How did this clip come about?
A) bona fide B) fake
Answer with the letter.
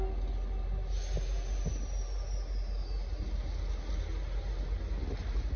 A